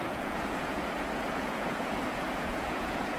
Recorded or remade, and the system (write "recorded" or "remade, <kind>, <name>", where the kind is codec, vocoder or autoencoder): remade, vocoder, Vocos